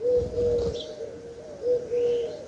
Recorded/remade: recorded